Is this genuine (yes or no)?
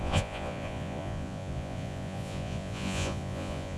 no